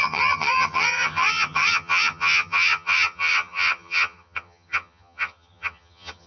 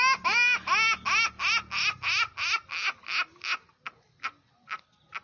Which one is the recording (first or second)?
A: second